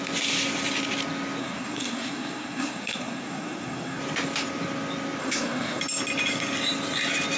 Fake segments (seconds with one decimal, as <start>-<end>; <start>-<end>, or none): 1.4-4.0; 5.2-5.8